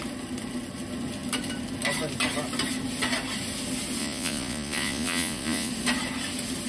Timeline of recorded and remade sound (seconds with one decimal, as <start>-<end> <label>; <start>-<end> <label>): 0.0-4.0 recorded; 4.0-5.7 remade; 5.7-6.7 recorded